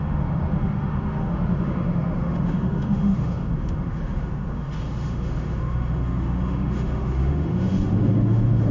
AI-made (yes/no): yes